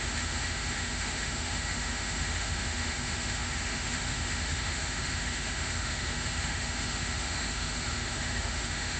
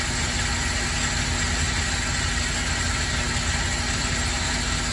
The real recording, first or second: second